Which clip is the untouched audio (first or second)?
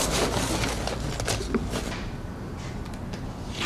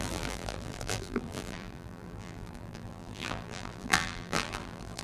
first